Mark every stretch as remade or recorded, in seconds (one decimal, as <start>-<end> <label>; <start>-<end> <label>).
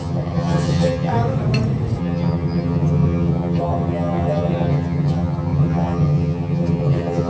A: 0.0-1.1 remade; 1.1-2.0 recorded; 2.0-7.3 remade